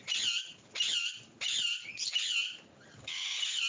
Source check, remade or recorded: recorded